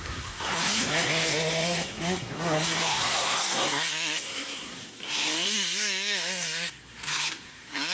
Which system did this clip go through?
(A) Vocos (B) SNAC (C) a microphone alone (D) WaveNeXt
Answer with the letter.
B